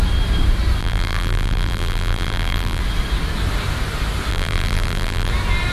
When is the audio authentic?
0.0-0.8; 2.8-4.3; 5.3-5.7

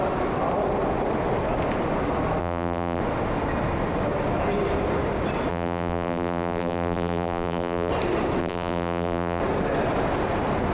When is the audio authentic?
0.0-2.4; 3.0-5.5; 7.9-8.4; 9.4-10.7

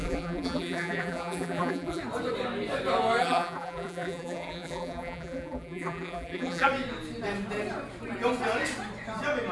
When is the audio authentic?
2.0-3.2; 6.7-9.5

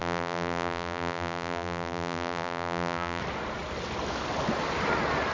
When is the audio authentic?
3.2-5.3

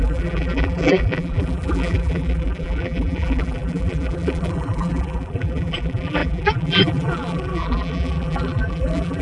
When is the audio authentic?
none

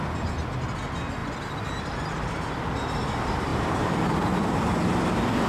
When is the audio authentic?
0.0-3.5; 4.6-5.5